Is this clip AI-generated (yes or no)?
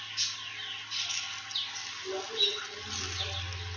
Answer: no